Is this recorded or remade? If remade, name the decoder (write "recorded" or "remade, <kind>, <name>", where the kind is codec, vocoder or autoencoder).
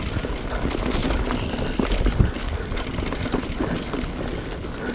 recorded